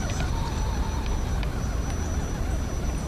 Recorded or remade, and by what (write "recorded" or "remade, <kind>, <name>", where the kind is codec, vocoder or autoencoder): recorded